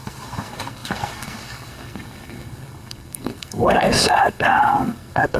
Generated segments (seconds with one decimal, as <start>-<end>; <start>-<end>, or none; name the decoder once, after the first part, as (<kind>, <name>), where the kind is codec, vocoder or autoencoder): 0.0-5.4 (codec, SNAC)